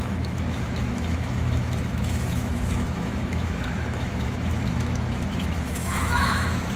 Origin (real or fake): fake